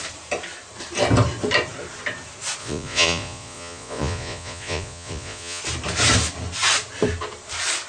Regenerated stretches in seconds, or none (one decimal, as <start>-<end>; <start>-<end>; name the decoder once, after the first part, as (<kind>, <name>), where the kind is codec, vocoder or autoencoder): 2.6-5.6 (vocoder, Vocos)